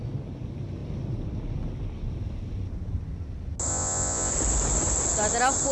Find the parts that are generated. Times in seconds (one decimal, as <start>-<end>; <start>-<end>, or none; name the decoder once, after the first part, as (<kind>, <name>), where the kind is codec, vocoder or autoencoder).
3.7-4.3 (vocoder, Vocos)